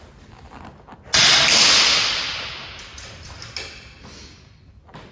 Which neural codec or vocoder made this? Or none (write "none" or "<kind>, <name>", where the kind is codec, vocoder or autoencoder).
none